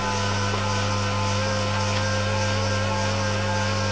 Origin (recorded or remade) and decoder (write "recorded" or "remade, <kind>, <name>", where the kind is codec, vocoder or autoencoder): recorded